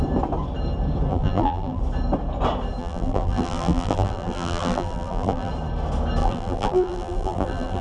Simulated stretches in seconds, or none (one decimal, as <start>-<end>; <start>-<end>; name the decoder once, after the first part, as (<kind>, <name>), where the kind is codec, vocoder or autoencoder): 1.1-1.8 (vocoder, BigVGAN v2); 2.8-5.5; 6.2-7.8